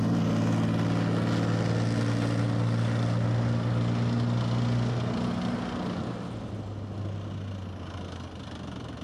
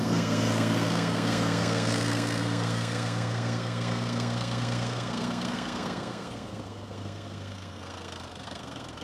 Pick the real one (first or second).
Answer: first